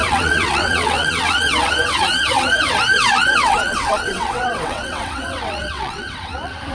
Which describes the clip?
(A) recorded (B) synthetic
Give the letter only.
B